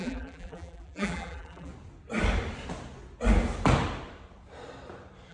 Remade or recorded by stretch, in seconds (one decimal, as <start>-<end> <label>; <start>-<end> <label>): 0.0-1.7 remade; 1.7-5.3 recorded